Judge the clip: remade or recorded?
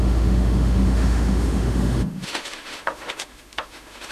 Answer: remade